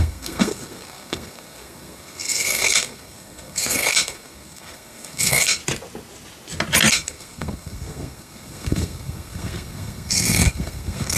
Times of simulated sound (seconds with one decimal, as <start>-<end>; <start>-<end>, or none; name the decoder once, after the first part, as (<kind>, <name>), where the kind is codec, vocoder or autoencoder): 0.0-5.6 (codec, SNAC); 6.9-11.2